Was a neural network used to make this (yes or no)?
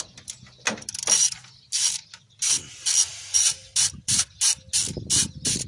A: no